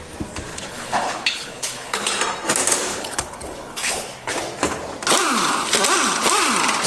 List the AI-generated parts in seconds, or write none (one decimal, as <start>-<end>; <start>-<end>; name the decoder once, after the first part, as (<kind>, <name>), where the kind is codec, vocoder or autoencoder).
0.5-2.2 (codec, HILCodec); 2.9-4.3